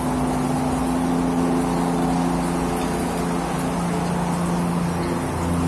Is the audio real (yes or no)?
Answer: yes